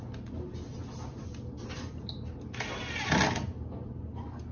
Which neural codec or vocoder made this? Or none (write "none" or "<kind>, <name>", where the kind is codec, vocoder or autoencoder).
none